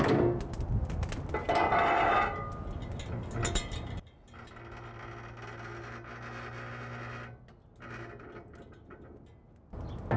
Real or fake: real